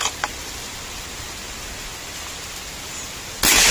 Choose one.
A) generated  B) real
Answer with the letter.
B